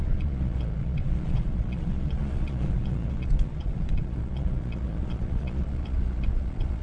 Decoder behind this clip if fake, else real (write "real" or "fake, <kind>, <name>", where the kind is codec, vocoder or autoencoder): fake, vocoder, Vocos